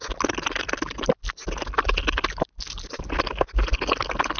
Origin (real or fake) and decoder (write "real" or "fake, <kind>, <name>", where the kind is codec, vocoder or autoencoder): real